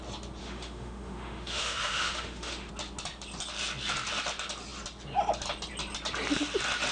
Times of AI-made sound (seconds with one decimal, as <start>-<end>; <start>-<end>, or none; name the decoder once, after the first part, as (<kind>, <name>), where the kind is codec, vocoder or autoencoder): 0.4-2.7 (autoencoder, DAC-VAE)